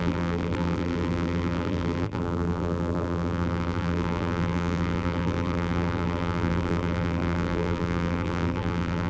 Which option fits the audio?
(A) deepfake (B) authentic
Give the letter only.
A